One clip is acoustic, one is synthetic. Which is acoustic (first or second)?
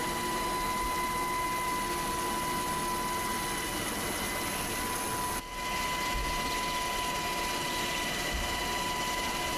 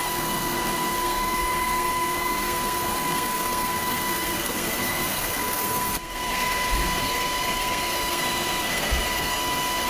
first